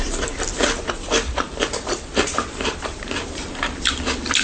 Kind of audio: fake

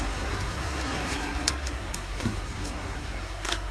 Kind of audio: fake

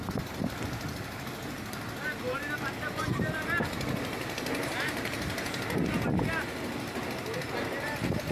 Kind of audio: real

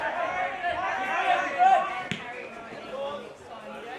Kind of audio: real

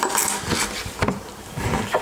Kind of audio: real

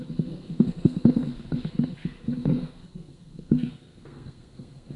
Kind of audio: fake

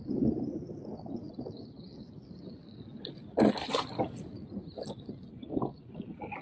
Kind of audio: real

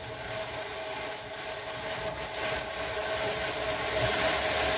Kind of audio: real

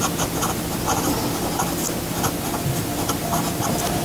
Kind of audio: fake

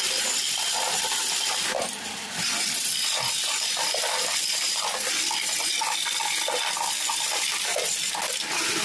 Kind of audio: real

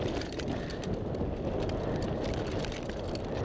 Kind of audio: real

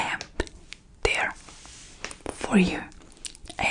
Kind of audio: real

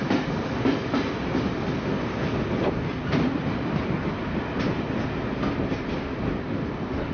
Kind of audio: real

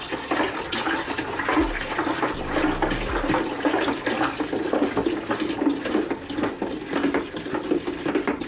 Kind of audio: real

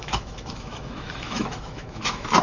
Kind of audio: fake